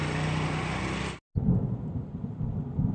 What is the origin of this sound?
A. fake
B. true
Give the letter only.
B